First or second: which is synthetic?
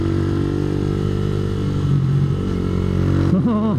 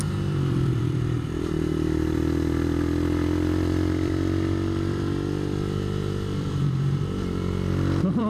second